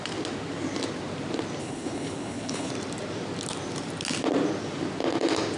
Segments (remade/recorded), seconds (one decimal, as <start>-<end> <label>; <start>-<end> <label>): 0.0-1.6 recorded; 1.6-2.7 remade; 2.7-5.6 recorded